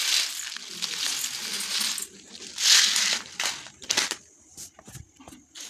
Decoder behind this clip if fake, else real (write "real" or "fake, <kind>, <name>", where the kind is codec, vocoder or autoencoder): real